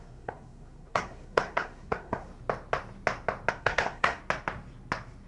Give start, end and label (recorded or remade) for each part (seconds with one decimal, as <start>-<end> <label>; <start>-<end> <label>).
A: 0.0-2.3 remade; 2.3-3.5 recorded; 3.5-4.2 remade; 4.2-5.3 recorded